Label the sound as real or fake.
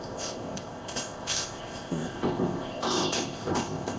fake